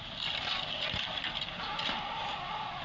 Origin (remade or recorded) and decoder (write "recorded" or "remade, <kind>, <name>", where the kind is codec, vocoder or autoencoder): recorded